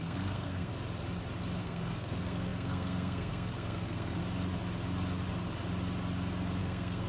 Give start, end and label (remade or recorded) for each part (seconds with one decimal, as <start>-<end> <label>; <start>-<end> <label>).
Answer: 0.0-0.7 remade; 0.7-1.6 recorded; 1.6-4.2 remade; 4.2-6.6 recorded; 6.6-7.1 remade